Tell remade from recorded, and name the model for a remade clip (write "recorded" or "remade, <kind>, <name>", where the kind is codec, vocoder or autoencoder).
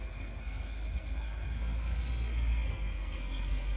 remade, codec, SNAC